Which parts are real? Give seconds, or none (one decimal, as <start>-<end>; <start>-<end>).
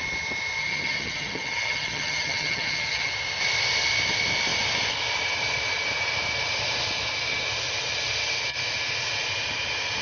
0.0-0.6; 3.1-10.0